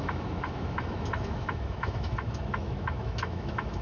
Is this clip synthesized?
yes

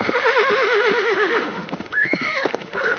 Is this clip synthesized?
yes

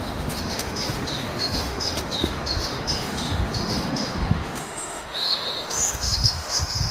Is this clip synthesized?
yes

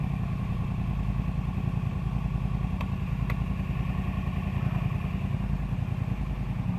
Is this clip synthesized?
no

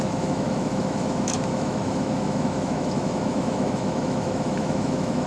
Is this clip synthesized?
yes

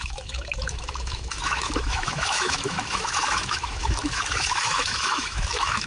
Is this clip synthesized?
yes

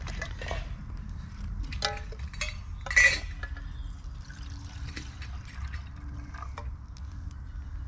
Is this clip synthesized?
no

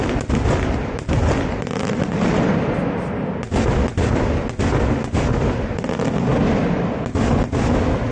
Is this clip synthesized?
no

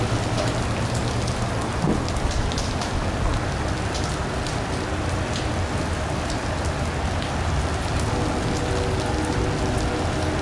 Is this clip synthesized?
no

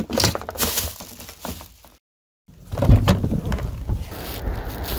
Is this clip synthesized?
no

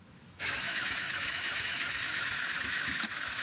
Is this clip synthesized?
yes